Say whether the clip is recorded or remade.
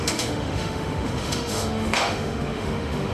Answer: remade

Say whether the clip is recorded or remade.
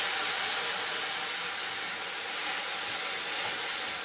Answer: recorded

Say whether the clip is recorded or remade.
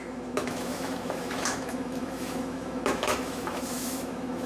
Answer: remade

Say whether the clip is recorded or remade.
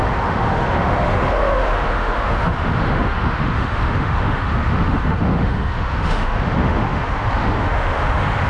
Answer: remade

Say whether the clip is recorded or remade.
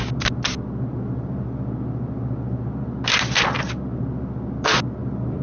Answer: recorded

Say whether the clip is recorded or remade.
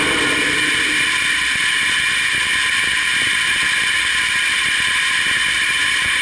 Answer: recorded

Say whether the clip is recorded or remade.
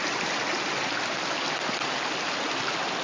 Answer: recorded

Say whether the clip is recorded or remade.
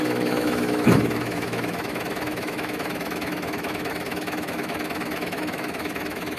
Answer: remade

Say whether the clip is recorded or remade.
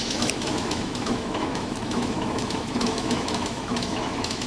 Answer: remade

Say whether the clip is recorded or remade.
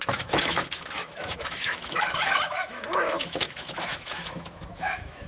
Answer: remade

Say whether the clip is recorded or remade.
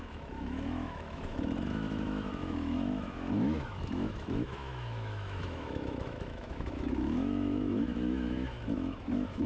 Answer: remade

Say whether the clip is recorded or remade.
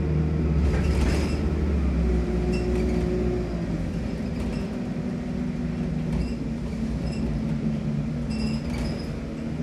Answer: recorded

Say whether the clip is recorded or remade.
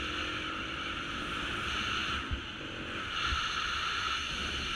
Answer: recorded